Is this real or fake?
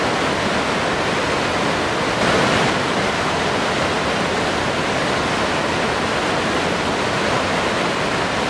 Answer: real